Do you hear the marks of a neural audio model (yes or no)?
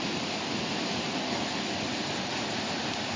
no